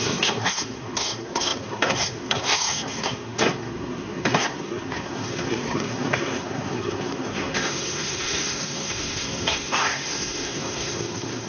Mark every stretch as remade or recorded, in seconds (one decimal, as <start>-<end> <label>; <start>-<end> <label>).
0.0-11.5 remade